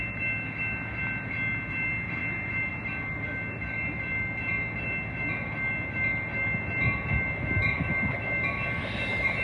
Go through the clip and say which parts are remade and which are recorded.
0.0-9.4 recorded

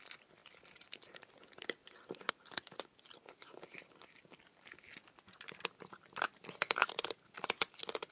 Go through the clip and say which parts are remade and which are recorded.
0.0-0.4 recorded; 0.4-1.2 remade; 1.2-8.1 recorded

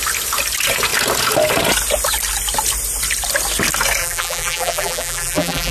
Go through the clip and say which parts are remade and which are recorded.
0.0-4.0 recorded; 4.0-5.7 remade